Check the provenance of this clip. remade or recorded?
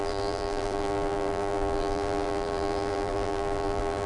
remade